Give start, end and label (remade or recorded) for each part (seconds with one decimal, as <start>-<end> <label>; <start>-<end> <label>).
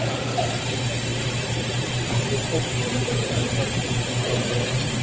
0.0-5.0 remade